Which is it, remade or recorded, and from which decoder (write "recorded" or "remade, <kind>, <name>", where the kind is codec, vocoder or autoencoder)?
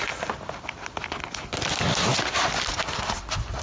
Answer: recorded